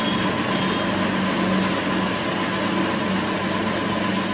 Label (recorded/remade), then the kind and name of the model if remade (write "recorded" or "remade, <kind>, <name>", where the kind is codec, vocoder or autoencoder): recorded